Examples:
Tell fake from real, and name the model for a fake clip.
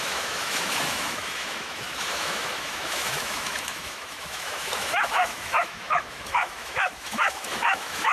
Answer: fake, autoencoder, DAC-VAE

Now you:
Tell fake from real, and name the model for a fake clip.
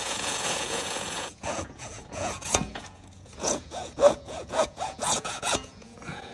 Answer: fake, vocoder, Vocos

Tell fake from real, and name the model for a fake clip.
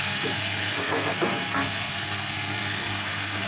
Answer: fake, codec, SNAC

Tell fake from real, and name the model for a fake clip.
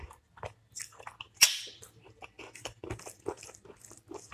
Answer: real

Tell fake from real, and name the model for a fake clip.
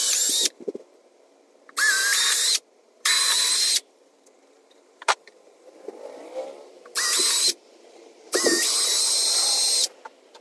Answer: fake, vocoder, BigVGAN v2